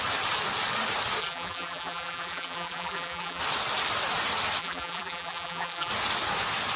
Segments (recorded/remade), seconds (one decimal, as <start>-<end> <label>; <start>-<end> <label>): 0.0-1.2 recorded; 1.2-3.4 remade; 3.4-4.6 recorded; 4.6-5.9 remade; 5.9-6.8 recorded